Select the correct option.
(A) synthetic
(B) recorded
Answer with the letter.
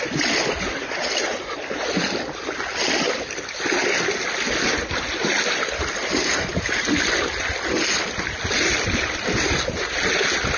B